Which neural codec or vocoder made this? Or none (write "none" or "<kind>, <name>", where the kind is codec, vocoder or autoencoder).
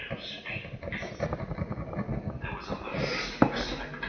none